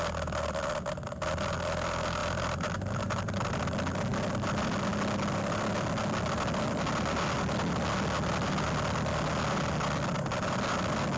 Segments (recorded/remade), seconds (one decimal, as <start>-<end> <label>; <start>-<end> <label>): 0.0-11.2 recorded